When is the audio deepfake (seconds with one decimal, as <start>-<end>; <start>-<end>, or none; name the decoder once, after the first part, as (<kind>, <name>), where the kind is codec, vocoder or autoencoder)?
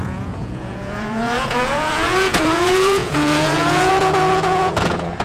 0.0-5.2 (vocoder, Vocos)